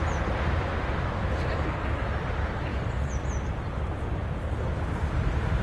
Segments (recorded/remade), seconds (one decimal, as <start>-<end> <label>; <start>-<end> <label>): 0.0-5.6 recorded